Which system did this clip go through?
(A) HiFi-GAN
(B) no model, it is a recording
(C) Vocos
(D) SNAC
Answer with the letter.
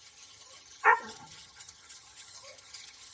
A